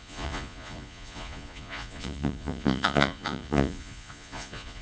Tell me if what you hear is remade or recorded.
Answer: remade